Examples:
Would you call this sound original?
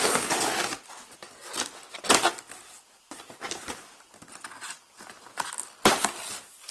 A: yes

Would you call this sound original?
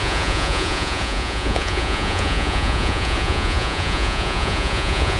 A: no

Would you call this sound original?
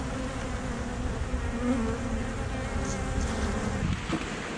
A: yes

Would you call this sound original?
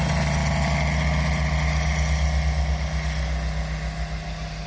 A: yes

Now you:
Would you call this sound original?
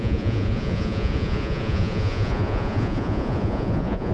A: no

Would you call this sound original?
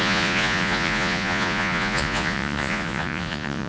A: no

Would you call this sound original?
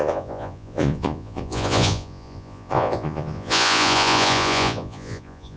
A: no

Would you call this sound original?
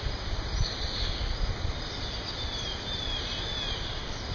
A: yes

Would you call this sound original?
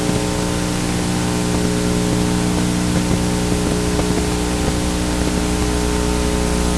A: yes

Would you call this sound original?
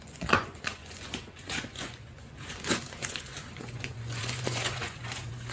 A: no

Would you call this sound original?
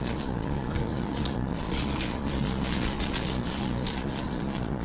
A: no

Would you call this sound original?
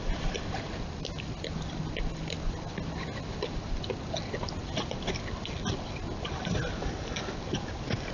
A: yes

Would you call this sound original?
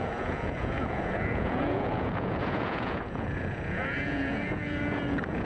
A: no